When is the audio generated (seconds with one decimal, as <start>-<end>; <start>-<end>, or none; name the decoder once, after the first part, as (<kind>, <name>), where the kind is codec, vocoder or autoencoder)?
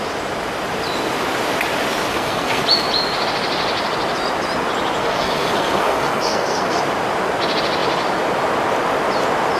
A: 2.1-2.6 (codec, SNAC); 5.0-6.8